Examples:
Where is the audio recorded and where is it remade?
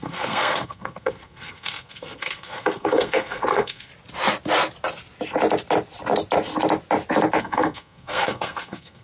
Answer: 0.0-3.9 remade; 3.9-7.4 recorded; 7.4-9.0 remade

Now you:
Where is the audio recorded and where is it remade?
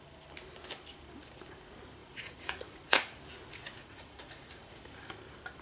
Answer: 0.0-2.0 recorded; 2.0-3.1 remade; 3.1-3.8 recorded; 3.8-4.8 remade; 4.8-5.6 recorded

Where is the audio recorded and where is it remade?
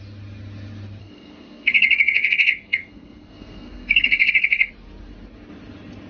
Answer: 0.0-1.0 recorded; 1.0-4.7 remade; 4.7-6.1 recorded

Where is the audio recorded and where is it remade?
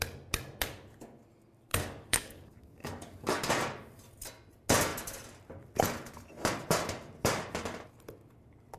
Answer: 0.0-1.7 recorded; 1.7-3.5 remade; 3.5-8.8 recorded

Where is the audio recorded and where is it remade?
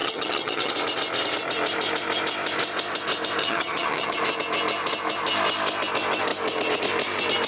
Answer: 0.0-0.7 remade; 0.7-3.4 recorded; 3.4-4.2 remade; 4.2-7.5 recorded